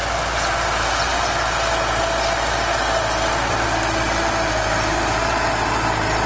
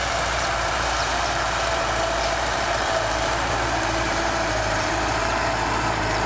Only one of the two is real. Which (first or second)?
first